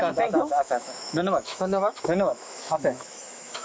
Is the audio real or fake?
fake